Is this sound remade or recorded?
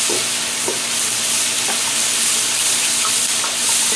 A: remade